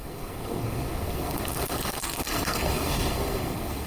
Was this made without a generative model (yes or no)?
no